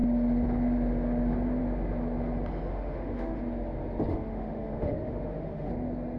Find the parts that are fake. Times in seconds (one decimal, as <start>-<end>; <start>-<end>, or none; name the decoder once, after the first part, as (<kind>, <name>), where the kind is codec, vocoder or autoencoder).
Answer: 2.7-3.4 (autoencoder, DAC-VAE); 4.1-5.7